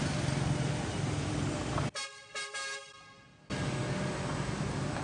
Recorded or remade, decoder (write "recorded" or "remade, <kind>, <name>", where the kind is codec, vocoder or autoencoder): recorded